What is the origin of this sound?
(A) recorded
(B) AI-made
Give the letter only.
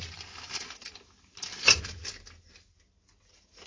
A